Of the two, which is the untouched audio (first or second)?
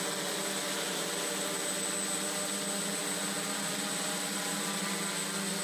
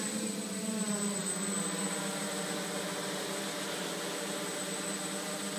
first